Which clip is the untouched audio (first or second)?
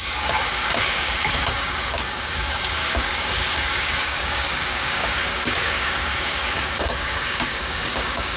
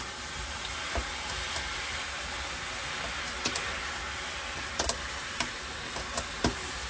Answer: second